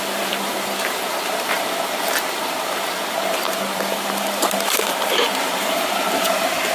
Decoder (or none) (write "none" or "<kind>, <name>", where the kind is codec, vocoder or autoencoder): vocoder, BigVGAN v2